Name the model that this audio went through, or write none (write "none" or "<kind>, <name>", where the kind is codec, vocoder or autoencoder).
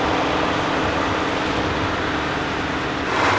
none